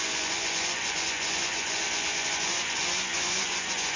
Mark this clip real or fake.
fake